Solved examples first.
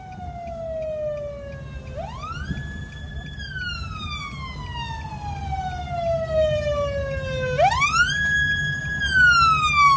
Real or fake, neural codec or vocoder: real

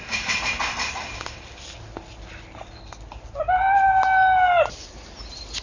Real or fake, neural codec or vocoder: real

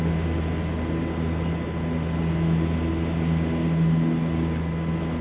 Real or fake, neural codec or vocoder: real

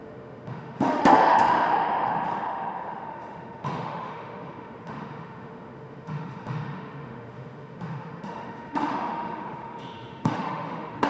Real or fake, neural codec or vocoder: fake, autoencoder, DAC-VAE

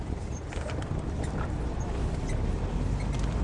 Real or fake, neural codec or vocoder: real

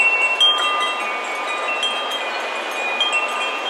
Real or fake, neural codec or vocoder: real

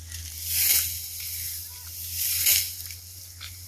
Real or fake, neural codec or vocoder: real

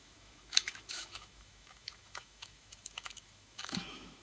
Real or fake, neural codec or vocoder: fake, autoencoder, DAC-VAE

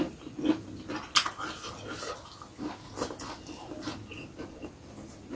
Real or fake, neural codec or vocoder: real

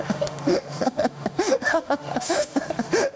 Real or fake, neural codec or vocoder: fake, autoencoder, DAC-VAE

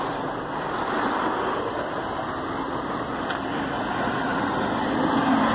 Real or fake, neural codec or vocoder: real